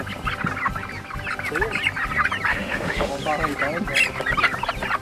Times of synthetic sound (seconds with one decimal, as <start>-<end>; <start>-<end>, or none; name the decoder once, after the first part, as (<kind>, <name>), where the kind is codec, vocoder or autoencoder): 2.5-3.1 (autoencoder, DAC-VAE)